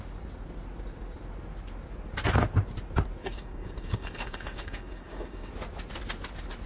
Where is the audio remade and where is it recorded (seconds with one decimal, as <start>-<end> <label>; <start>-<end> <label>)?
0.0-3.2 recorded; 3.2-5.5 remade; 5.5-6.7 recorded